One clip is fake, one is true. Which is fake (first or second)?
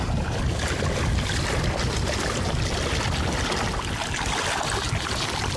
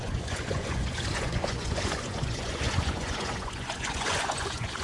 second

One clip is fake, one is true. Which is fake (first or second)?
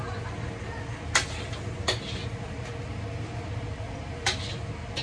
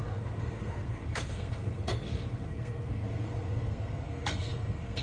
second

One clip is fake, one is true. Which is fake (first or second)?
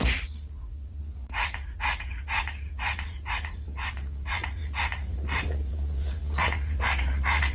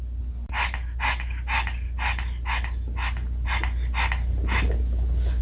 first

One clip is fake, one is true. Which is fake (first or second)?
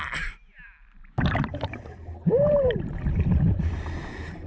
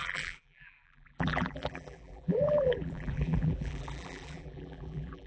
second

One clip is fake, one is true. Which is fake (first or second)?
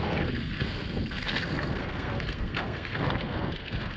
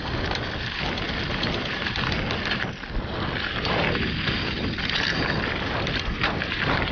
first